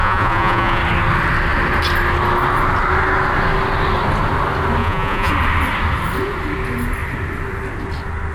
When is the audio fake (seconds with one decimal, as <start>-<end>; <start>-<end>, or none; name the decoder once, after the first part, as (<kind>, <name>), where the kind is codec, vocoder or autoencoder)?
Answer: 0.0-0.8 (vocoder, Vocos); 4.8-5.3